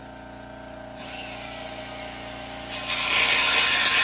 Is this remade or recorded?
recorded